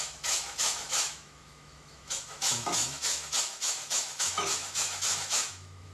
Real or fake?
fake